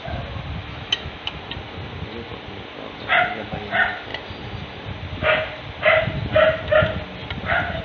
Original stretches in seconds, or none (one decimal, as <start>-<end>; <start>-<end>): 0.0-0.6; 1.4-7.8